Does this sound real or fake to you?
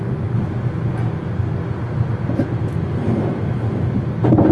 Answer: real